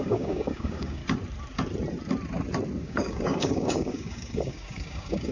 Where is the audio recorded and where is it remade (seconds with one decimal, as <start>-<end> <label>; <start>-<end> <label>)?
0.0-1.0 remade; 1.0-2.8 recorded; 2.8-5.3 remade